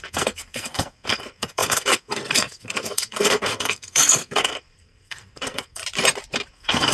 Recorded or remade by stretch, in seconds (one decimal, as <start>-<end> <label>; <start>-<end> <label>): 0.0-5.8 remade; 5.8-6.5 recorded; 6.5-6.9 remade